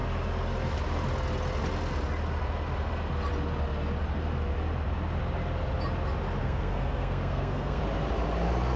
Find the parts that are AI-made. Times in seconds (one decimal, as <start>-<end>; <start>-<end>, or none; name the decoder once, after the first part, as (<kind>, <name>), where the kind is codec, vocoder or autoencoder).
6.4-7.8 (codec, SNAC)